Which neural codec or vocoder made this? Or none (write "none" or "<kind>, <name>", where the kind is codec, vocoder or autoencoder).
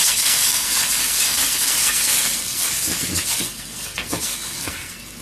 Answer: codec, SNAC